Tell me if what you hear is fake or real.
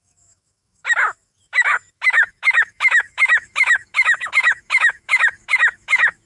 fake